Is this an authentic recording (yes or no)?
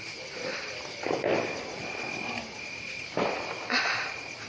yes